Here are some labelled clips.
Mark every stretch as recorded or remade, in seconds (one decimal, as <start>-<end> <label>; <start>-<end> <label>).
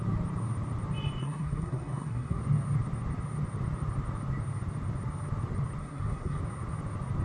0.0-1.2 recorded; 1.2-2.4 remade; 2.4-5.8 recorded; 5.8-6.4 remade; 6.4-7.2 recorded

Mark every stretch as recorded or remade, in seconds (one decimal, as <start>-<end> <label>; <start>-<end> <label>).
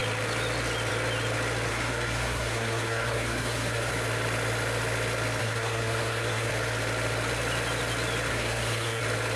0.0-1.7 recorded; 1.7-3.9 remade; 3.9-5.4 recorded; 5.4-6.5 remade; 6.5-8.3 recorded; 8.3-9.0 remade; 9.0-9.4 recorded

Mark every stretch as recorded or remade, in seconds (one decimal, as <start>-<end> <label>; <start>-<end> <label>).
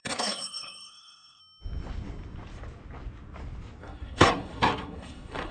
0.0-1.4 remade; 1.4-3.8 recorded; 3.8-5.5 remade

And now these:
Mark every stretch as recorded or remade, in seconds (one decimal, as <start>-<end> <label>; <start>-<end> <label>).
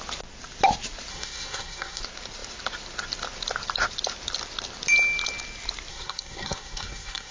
0.0-1.1 recorded; 1.1-2.0 remade; 2.0-5.9 recorded; 5.9-7.3 remade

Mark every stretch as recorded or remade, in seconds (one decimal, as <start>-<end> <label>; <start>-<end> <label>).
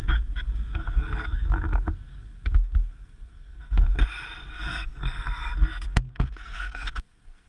0.0-3.9 remade; 3.9-4.5 recorded; 4.5-7.5 remade